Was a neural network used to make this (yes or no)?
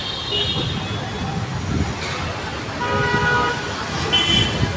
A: no